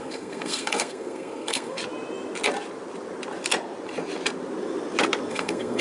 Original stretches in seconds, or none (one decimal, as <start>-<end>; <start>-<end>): 1.8-5.3